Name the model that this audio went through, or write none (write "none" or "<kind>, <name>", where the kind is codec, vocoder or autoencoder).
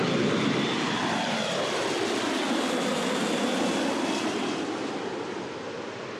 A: none